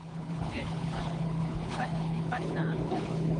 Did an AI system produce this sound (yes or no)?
yes